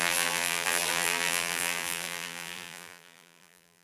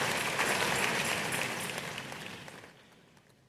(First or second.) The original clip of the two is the second